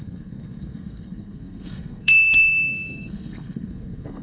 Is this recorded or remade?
remade